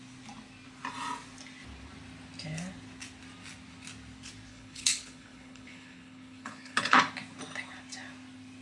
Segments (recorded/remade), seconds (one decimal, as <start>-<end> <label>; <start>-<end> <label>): 0.0-4.5 recorded; 4.5-7.0 remade; 7.0-8.6 recorded